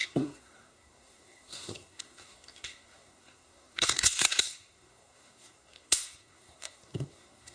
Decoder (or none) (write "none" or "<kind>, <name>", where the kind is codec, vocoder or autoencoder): codec, SNAC